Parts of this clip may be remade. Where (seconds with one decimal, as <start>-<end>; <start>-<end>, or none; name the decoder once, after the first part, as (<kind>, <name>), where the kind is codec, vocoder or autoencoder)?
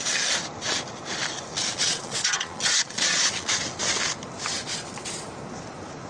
1.5-3.5 (vocoder, Vocos)